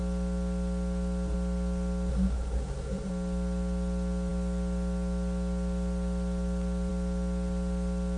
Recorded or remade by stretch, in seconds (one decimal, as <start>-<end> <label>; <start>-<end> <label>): 0.0-2.1 recorded; 2.1-3.1 remade; 3.1-8.2 recorded